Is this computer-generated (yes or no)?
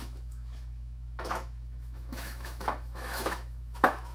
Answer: yes